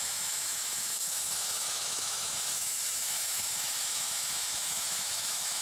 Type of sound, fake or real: fake